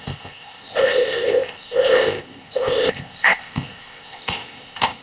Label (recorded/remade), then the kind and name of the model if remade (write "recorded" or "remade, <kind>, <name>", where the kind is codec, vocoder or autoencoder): remade, codec, ZipCodec